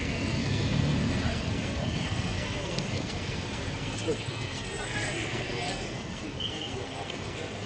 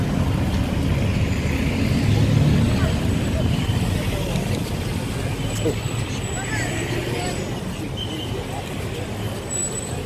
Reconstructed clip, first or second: first